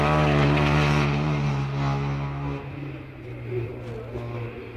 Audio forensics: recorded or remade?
recorded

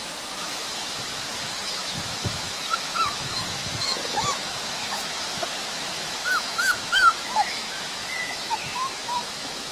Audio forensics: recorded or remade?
remade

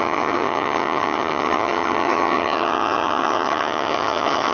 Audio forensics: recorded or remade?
remade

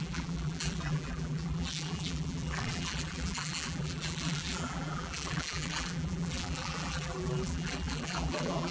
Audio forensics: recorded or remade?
remade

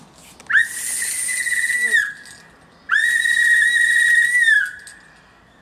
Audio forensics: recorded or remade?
recorded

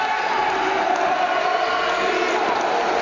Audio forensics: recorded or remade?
recorded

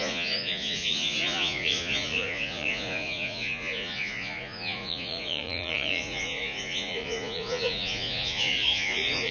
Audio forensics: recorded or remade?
remade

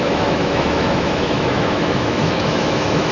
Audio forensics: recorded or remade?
remade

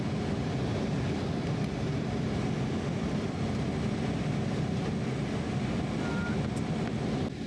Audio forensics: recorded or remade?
recorded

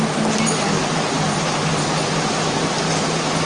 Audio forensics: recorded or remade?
recorded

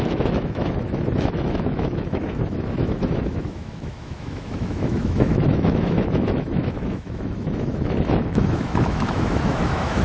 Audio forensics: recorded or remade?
remade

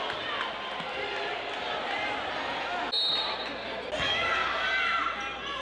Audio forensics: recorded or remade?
recorded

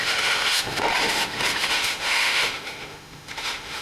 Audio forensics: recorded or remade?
remade